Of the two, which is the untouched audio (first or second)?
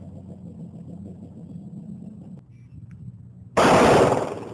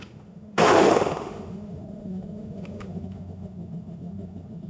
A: first